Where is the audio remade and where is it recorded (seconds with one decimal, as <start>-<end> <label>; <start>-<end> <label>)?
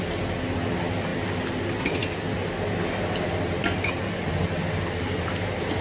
0.0-5.8 recorded